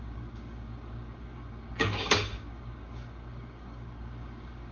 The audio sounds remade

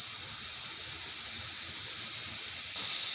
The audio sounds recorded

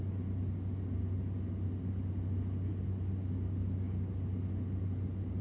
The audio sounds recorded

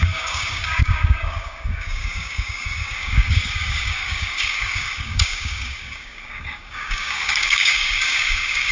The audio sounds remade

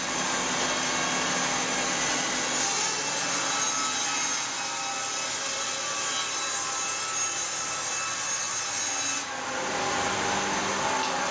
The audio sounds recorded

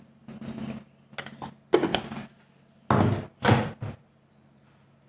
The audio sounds recorded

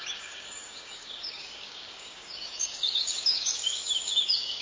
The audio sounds remade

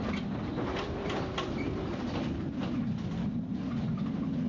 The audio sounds recorded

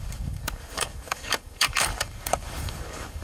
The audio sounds remade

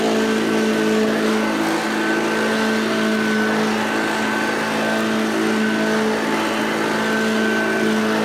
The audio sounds recorded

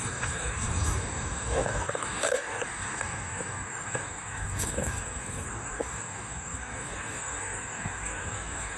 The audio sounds remade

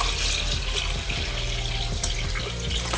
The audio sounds recorded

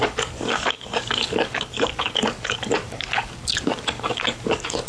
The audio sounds remade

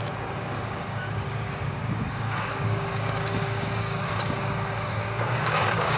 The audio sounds remade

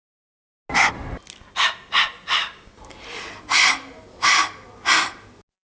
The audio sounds recorded